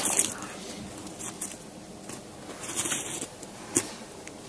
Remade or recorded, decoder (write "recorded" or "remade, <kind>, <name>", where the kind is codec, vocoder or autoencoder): recorded